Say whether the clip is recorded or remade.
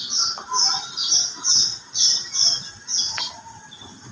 recorded